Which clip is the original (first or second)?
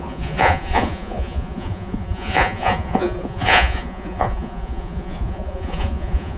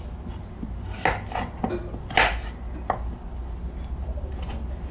second